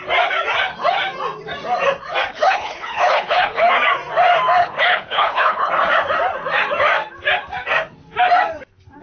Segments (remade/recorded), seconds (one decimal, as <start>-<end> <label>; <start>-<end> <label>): 0.0-2.3 recorded; 2.3-3.7 remade; 3.7-4.6 recorded; 4.6-5.7 remade; 5.7-9.0 recorded